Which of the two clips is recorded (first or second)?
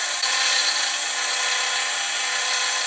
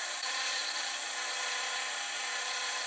first